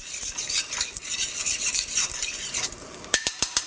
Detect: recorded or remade remade